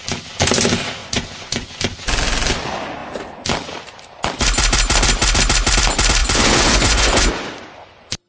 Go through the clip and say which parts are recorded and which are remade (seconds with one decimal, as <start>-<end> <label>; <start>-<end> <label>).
0.0-1.0 recorded; 1.0-1.8 remade; 1.8-6.2 recorded; 6.2-7.3 remade; 7.3-8.3 recorded